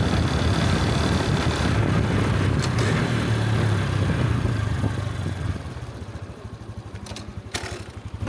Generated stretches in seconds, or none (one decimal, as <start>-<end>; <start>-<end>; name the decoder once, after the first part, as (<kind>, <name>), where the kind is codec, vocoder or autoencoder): 3.0-4.5 (vocoder, BigVGAN v2)